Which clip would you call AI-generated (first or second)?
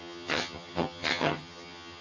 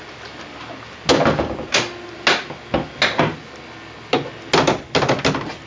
first